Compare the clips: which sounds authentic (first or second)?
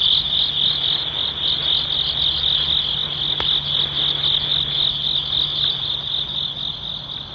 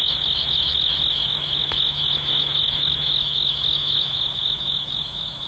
first